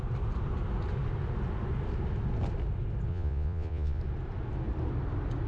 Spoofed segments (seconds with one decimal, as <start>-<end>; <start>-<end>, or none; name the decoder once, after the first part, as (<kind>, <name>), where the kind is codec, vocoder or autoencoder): 3.1-4.0 (vocoder, Vocos)